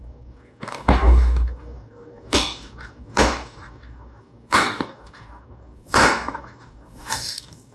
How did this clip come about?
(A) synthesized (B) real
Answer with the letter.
A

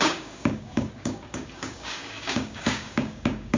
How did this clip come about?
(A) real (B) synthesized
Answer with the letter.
B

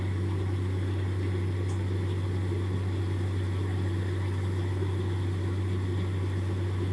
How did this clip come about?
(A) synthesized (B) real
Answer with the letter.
B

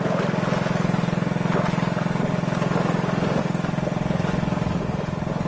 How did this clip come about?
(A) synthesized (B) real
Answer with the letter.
B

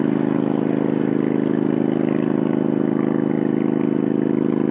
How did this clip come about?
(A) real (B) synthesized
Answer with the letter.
A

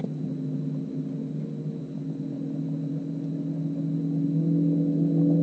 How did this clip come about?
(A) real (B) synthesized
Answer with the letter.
A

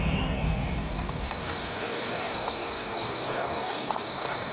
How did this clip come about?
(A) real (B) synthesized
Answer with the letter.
B